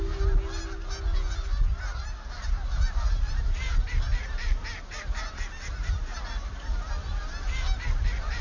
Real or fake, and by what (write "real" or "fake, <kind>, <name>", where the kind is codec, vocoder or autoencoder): real